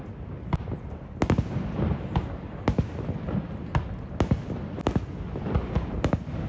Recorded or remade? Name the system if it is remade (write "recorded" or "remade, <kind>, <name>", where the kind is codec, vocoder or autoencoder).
recorded